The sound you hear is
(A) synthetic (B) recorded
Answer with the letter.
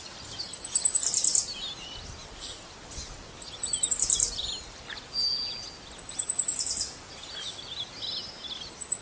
B